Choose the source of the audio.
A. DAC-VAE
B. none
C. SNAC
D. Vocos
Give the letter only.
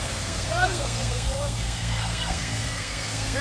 C